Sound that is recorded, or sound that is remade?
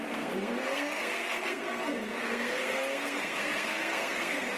remade